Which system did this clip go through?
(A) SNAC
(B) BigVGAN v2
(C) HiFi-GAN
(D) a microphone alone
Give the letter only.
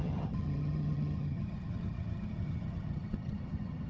C